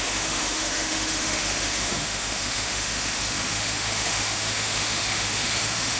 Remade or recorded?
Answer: remade